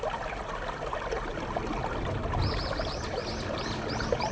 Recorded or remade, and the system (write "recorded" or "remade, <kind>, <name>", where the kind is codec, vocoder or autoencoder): recorded